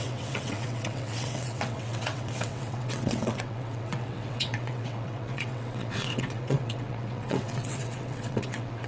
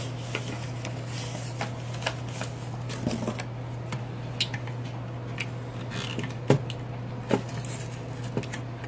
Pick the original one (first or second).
second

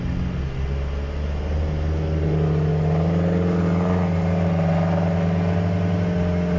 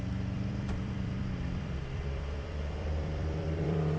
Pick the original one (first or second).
first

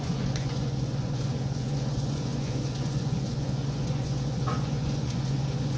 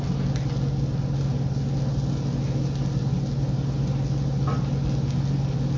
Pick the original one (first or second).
second